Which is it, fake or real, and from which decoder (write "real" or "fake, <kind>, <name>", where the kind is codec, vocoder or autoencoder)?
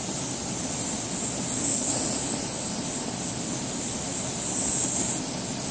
real